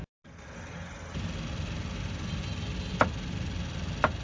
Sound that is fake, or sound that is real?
real